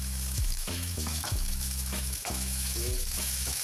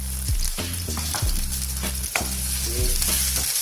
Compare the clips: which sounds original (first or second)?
second